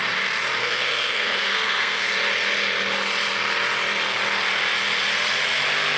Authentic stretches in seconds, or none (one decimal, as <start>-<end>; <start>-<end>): 0.0-0.6; 2.1-6.0

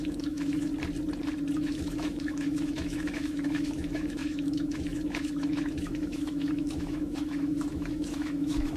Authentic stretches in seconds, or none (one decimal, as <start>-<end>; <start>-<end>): 0.7-1.6